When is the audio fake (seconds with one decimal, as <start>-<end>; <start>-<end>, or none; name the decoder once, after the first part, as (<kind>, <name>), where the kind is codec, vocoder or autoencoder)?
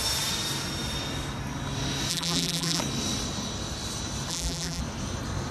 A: 2.1-2.8 (vocoder, BigVGAN v2); 4.3-4.8